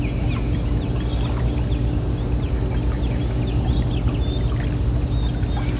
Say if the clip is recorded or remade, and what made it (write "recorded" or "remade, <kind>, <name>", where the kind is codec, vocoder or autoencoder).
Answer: recorded